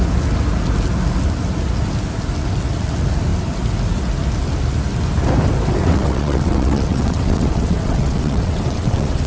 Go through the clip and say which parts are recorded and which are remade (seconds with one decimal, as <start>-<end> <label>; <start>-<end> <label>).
0.0-5.8 recorded; 5.8-9.3 remade